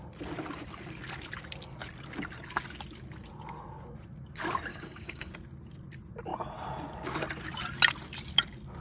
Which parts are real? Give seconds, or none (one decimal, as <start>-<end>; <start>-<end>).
0.0-4.7; 5.3-8.8